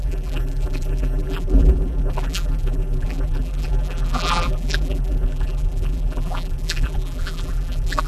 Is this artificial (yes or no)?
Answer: yes